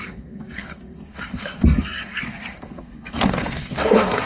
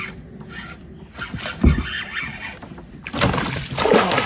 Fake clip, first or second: first